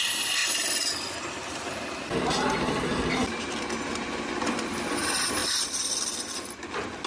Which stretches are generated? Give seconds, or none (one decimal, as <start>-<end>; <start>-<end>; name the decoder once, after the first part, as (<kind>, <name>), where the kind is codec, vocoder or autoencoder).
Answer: none